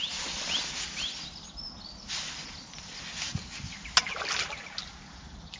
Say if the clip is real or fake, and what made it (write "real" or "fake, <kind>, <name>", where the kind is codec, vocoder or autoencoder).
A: real